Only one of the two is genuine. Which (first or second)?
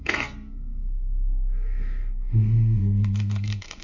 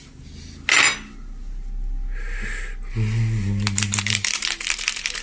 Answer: second